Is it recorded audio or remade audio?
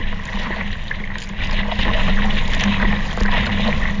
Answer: recorded